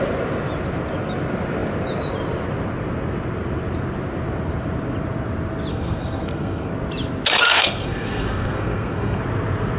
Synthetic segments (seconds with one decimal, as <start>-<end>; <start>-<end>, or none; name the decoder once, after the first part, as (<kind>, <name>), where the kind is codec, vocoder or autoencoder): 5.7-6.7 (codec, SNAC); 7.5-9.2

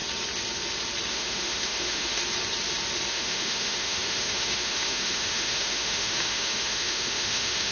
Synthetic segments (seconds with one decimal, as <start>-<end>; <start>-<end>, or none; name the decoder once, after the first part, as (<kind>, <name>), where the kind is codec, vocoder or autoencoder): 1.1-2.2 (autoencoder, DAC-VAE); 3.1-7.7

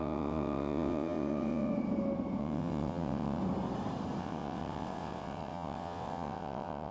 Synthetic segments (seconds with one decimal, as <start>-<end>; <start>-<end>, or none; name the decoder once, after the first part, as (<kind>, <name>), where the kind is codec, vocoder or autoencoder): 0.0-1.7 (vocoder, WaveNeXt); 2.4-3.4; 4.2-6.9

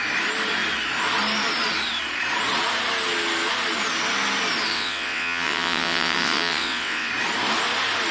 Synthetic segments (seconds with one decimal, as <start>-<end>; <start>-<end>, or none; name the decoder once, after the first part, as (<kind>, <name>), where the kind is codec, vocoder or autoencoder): 4.7-7.1 (vocoder, WaveNeXt)

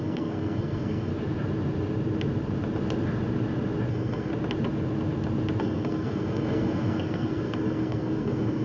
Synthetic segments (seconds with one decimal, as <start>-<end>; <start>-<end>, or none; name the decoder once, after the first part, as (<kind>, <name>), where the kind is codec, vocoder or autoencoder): 0.0-1.1 (codec, SNAC); 3.9-4.3; 5.6-8.6

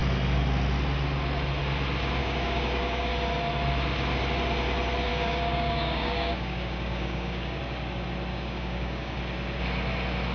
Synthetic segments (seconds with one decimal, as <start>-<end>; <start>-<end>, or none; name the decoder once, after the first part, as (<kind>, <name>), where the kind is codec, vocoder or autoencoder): 2.2-3.1 (codec, DAC); 5.1-7.6; 8.3-9.2

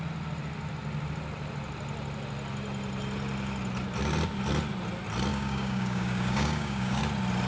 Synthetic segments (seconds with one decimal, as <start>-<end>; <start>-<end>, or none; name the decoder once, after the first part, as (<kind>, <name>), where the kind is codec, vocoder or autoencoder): 5.3-7.0 (codec, DAC)

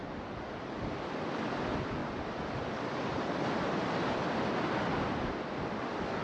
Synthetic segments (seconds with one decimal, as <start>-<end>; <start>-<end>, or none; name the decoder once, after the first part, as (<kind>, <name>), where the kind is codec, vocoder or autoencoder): 0.0-1.5 (vocoder, BigVGAN v2); 2.0-5.7